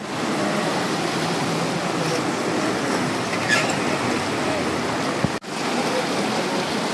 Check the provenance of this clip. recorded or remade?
recorded